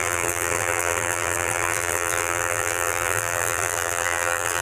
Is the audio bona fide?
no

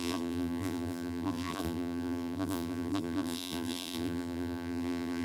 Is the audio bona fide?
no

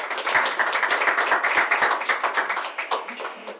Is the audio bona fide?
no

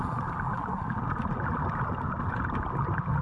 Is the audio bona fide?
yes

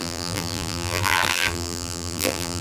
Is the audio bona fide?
no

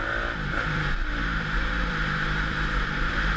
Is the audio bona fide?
no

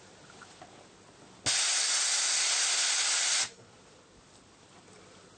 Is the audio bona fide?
yes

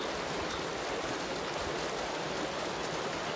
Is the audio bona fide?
yes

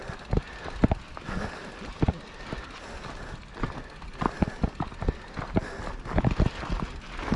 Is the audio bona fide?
yes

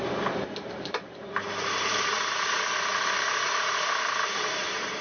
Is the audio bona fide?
no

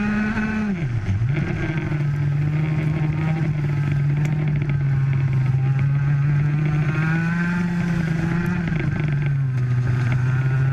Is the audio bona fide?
yes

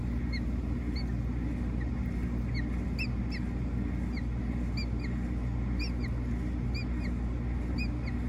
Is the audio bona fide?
yes